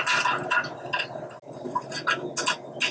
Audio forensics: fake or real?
real